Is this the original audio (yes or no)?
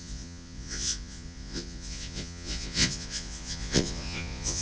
no